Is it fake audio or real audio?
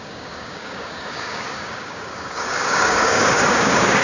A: fake